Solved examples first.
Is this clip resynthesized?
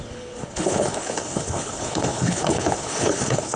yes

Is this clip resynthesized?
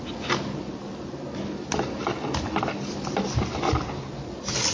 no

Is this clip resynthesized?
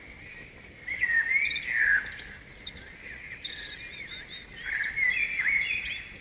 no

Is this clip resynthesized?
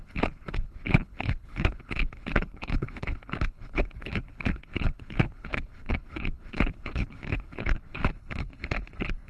yes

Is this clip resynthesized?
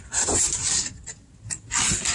no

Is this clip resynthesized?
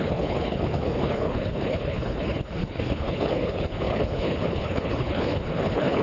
yes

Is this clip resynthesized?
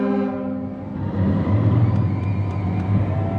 no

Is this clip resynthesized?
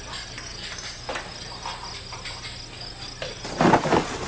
no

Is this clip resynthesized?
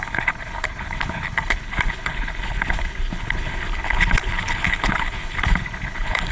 yes